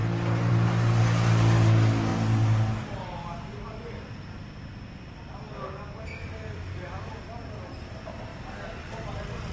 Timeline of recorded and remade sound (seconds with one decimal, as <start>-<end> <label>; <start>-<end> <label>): 0.0-9.5 recorded